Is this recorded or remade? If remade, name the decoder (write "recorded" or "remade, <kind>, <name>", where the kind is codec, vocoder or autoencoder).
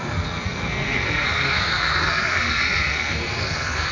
remade, codec, SNAC